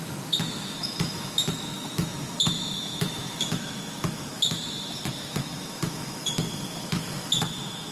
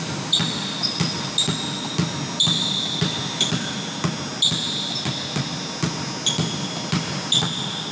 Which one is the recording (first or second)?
second